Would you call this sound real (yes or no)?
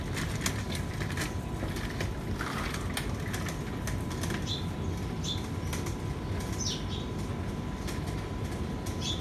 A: yes